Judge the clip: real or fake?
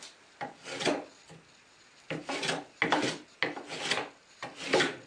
real